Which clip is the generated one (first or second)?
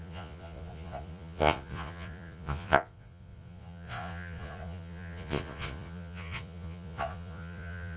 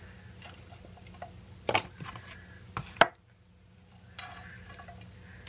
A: first